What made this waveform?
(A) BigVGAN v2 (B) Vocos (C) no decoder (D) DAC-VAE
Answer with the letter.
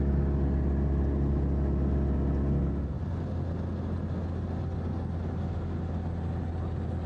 C